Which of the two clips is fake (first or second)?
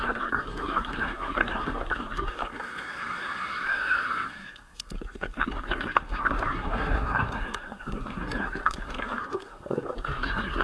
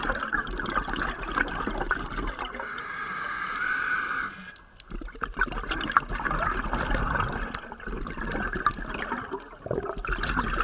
first